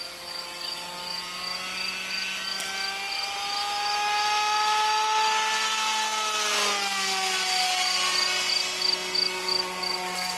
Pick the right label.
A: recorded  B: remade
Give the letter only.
A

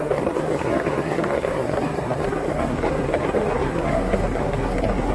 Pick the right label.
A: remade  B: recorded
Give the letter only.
A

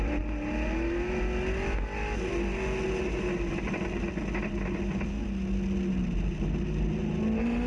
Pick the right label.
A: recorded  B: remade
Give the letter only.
A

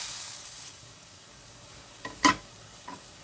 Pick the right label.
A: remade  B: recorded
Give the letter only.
A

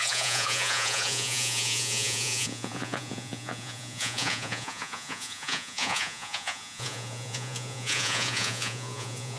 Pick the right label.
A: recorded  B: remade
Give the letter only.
B